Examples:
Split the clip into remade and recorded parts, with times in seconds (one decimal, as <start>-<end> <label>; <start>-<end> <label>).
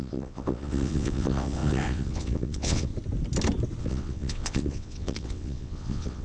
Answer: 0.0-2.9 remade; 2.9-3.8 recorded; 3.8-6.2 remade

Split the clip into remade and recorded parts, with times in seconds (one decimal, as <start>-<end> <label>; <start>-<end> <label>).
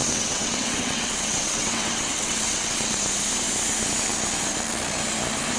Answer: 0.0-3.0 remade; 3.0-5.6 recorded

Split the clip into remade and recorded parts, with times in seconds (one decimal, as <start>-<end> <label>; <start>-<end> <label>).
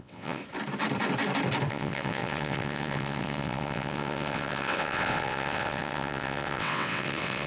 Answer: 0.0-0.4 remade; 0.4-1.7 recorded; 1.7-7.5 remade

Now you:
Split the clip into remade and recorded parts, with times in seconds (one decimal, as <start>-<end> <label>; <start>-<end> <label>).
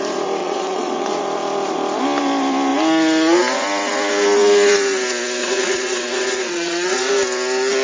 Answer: 0.0-0.4 recorded; 0.4-1.2 remade; 1.2-5.4 recorded; 5.4-7.1 remade; 7.1-7.8 recorded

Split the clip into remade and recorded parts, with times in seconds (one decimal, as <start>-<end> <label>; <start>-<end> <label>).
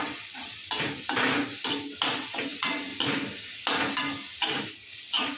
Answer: 0.0-0.6 remade; 0.6-2.1 recorded; 2.1-2.9 remade; 2.9-5.4 recorded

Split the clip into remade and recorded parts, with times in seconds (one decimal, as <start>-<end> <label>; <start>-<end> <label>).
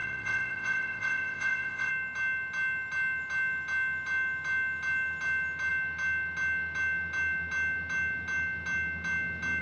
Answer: 0.0-1.9 remade; 1.9-9.6 recorded